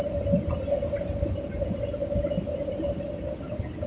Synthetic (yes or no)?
no